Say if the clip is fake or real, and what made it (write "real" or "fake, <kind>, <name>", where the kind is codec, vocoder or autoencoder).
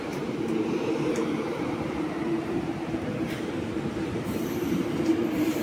fake, vocoder, BigVGAN v2